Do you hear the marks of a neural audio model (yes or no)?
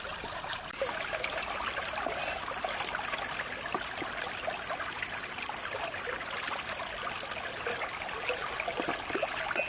no